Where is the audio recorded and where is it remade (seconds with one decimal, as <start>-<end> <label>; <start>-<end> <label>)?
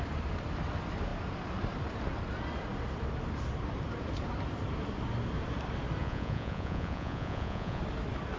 0.0-6.0 recorded; 6.0-7.8 remade; 7.8-8.4 recorded